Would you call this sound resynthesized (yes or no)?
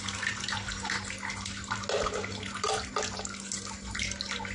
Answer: no